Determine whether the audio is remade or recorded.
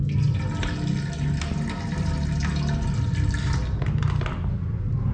recorded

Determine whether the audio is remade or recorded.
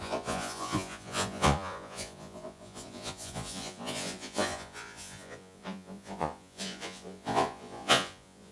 remade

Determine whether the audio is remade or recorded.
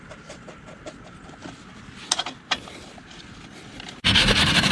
recorded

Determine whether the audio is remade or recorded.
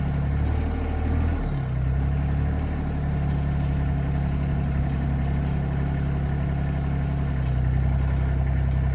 recorded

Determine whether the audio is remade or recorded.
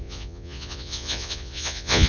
remade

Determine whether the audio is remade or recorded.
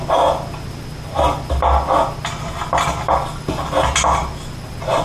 recorded